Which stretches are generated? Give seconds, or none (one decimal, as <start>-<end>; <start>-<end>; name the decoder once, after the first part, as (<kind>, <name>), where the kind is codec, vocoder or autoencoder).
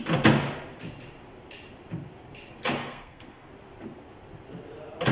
2.8-3.5 (codec, SNAC)